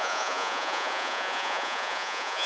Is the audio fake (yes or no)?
yes